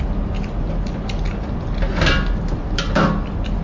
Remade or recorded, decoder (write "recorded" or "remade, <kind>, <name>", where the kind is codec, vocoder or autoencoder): recorded